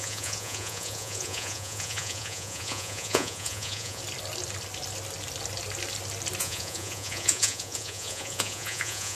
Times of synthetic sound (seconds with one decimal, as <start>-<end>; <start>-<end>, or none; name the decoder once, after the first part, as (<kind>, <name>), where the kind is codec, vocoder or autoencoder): 0.0-4.0 (vocoder, Vocos); 6.4-9.2